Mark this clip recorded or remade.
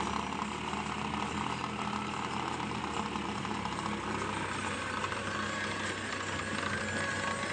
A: recorded